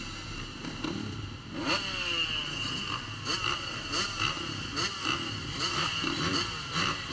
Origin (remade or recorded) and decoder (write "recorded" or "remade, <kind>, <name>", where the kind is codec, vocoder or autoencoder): recorded